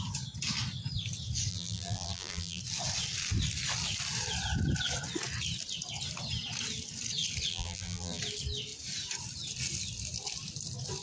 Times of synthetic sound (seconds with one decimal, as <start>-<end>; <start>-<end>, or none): 1.5-2.6; 7.5-8.2